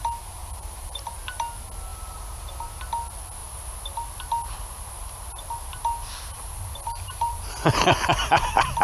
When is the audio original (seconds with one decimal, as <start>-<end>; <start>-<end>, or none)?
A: 0.0-0.4; 1.1-1.9; 2.7-6.0; 7.4-8.8